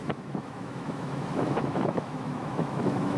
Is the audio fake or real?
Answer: fake